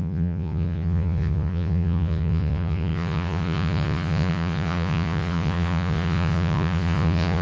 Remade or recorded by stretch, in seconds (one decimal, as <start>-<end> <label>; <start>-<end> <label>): 0.0-7.4 remade